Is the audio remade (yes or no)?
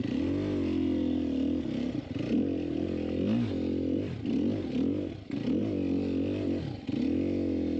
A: no